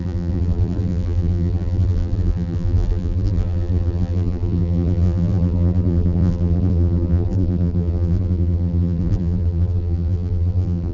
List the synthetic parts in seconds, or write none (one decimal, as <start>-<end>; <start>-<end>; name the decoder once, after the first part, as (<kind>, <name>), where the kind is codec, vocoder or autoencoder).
0.0-10.9 (vocoder, BigVGAN v2)